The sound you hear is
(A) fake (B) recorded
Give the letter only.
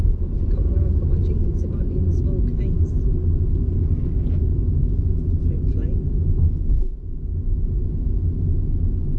B